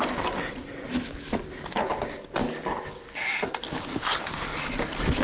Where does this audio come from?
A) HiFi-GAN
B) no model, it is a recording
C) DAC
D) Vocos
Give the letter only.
B